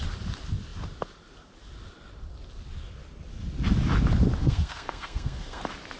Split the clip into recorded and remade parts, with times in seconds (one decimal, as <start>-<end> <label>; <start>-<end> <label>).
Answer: 0.0-4.4 recorded; 4.4-5.6 remade; 5.6-6.0 recorded